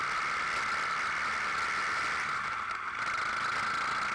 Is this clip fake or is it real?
real